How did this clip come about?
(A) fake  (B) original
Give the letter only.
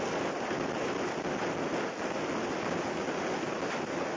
B